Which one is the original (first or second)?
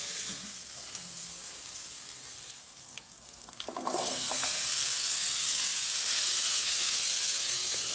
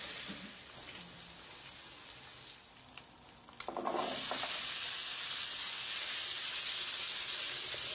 second